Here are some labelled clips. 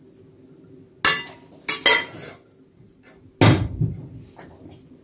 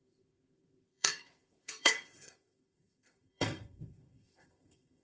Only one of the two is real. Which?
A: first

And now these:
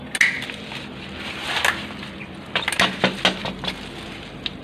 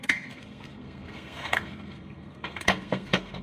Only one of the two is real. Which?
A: first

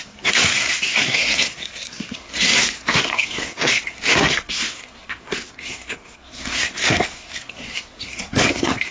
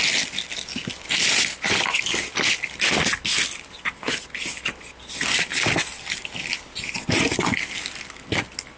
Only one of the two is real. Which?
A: second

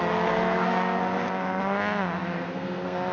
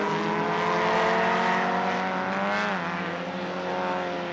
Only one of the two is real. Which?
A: second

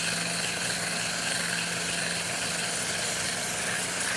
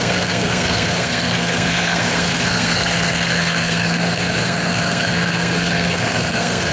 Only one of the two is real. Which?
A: first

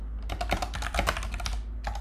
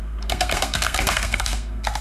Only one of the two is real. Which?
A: first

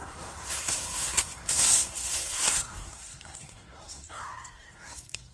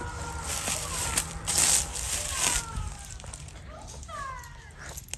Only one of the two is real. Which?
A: second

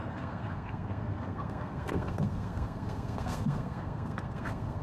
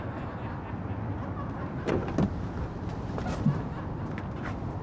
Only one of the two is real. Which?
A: second